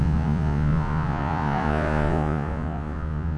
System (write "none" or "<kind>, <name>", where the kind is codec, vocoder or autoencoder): vocoder, Vocos